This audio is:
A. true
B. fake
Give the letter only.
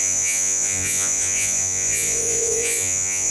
B